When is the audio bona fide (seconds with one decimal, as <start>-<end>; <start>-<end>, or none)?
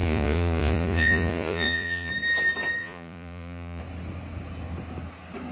2.1-2.8; 3.8-5.5